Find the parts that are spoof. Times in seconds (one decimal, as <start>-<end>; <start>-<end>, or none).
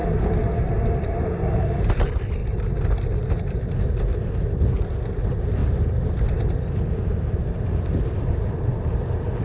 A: none